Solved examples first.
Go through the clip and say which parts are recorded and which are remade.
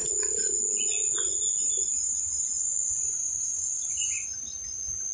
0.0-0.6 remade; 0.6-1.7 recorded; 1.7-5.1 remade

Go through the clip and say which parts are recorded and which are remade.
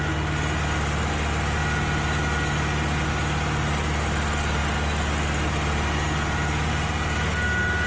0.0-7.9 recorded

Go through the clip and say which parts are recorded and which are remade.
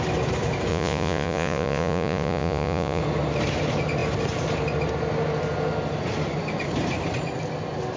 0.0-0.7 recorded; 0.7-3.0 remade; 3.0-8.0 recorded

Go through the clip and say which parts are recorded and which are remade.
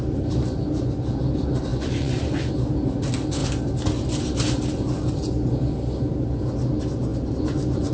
0.0-1.7 recorded; 1.7-2.5 remade; 2.5-7.9 recorded